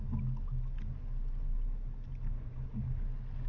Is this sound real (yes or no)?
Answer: yes